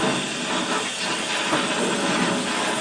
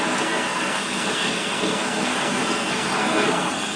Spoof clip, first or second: second